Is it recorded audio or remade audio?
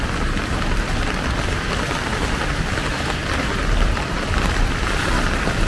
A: remade